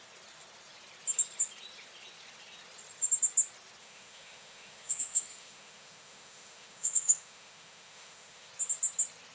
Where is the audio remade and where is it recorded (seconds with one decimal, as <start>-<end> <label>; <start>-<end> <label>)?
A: 0.0-3.8 recorded; 3.8-8.5 remade; 8.5-9.3 recorded